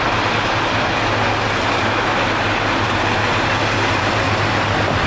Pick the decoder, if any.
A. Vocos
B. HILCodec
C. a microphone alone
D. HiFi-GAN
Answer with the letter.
C